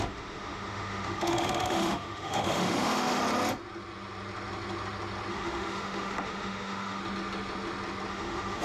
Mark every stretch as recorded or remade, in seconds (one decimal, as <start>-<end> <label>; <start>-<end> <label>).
0.0-3.2 remade; 3.2-5.3 recorded; 5.3-7.0 remade; 7.0-8.1 recorded; 8.1-8.6 remade